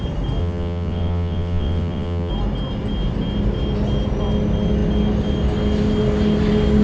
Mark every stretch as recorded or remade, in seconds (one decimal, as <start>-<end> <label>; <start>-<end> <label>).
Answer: 0.0-0.4 recorded; 0.4-2.3 remade; 2.3-6.8 recorded